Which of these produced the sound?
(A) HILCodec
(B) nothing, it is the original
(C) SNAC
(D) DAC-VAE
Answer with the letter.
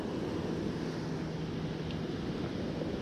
B